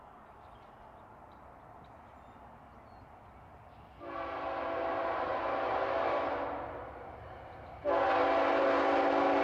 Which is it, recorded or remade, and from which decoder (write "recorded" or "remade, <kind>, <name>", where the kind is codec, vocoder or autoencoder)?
recorded